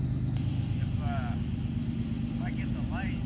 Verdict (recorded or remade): recorded